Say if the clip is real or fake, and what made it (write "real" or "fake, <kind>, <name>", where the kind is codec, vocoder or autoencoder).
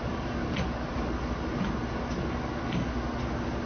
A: real